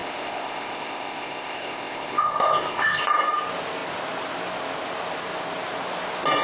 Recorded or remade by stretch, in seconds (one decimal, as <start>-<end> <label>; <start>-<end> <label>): 0.0-3.0 remade; 3.0-6.4 recorded